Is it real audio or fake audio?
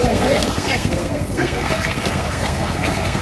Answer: fake